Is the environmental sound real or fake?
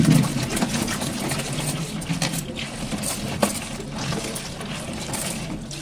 real